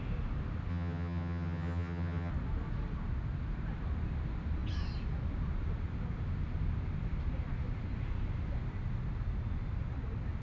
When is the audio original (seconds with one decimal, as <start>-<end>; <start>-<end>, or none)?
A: 0.0-0.7; 2.3-10.4